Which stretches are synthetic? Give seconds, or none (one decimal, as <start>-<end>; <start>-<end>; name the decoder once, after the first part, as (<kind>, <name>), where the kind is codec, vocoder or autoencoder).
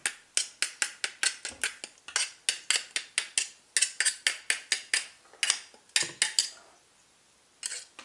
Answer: none